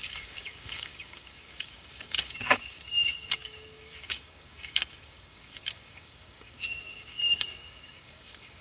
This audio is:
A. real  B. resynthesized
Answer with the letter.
B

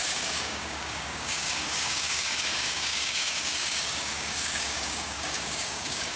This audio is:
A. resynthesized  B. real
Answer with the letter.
A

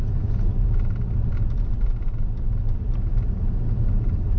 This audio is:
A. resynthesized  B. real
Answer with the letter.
B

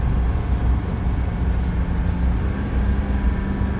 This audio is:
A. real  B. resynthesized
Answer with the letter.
A